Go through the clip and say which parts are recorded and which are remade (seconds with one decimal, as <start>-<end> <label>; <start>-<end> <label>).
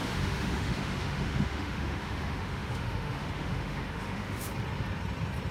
0.0-4.5 remade; 4.5-5.5 recorded